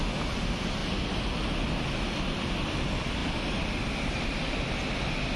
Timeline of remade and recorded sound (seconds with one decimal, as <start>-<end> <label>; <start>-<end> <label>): 0.0-0.8 remade; 0.8-1.9 recorded; 1.9-5.4 remade